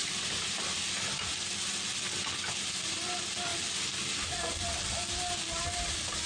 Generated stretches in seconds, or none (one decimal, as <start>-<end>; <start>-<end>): 0.0-0.6